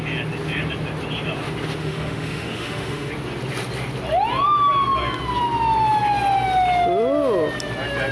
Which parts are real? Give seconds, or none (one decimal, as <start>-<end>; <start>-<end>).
0.0-1.8; 3.1-8.1